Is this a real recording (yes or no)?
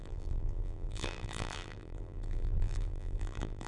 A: no